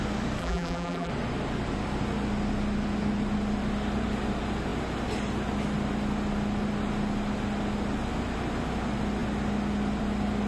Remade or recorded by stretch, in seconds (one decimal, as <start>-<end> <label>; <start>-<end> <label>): 0.0-0.4 recorded; 0.4-1.1 remade; 1.1-10.5 recorded